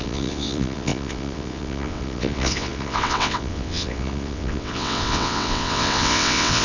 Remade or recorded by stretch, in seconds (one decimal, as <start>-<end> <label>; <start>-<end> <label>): 0.0-6.6 remade